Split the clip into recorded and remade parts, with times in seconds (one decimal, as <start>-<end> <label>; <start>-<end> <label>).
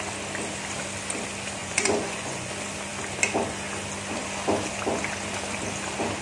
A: 0.0-1.6 recorded; 1.6-2.5 remade; 2.5-6.2 recorded